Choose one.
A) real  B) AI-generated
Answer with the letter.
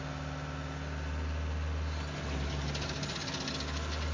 A